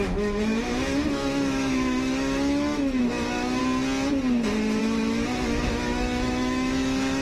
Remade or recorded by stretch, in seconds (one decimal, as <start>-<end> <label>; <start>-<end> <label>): 0.0-3.6 remade; 3.6-4.8 recorded; 4.8-7.2 remade